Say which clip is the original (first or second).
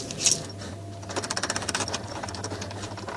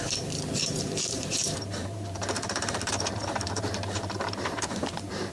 first